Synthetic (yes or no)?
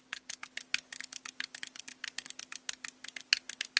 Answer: no